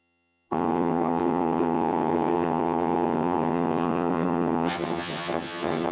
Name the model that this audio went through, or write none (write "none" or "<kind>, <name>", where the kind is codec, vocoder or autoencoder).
vocoder, HiFi-GAN